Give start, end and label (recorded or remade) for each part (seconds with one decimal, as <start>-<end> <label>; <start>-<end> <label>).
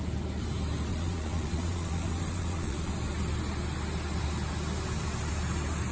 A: 0.0-0.9 recorded; 0.9-2.9 remade; 2.9-5.9 recorded